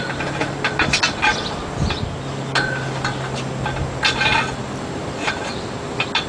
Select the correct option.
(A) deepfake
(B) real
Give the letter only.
B